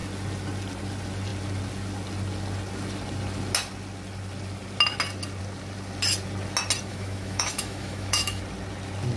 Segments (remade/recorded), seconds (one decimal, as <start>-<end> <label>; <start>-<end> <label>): 0.0-6.9 recorded; 6.9-8.4 remade; 8.4-9.2 recorded